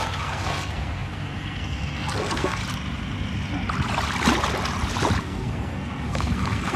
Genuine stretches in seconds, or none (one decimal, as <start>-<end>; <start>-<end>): 2.6-5.2